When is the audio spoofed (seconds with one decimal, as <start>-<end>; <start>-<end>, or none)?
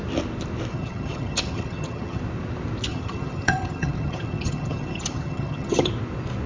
0.7-2.2; 2.9-5.9